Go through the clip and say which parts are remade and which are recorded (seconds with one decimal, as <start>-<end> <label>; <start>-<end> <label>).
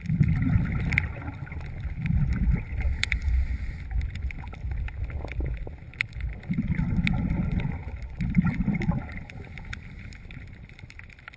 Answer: 0.0-11.4 recorded